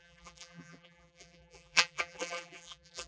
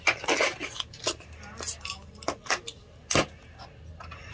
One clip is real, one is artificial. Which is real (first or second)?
second